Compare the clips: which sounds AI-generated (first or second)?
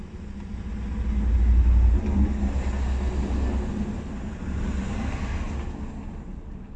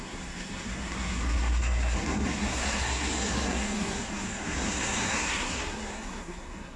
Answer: second